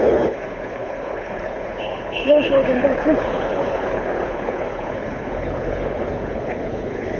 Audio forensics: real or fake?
fake